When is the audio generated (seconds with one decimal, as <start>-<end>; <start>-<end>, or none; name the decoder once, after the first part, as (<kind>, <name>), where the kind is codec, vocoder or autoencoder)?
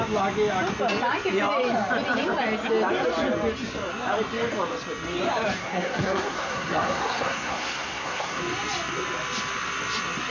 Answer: 5.6-8.4 (codec, SNAC)